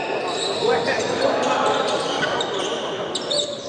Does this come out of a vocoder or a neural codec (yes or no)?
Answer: no